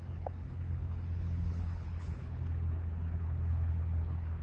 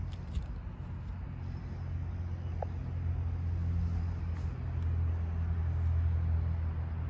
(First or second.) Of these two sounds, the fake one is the first